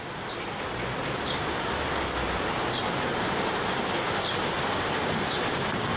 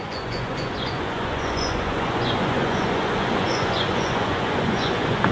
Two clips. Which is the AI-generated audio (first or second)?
second